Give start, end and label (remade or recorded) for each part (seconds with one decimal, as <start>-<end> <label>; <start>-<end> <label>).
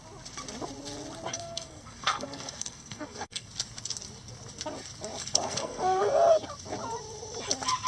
0.0-1.3 recorded; 1.3-3.5 remade; 3.5-5.2 recorded; 5.2-6.0 remade; 6.0-7.9 recorded